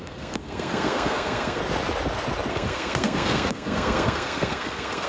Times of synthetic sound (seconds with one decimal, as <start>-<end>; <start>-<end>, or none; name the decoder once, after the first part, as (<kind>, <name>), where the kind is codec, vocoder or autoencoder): 0.0-1.6 (codec, SNAC); 2.5-5.1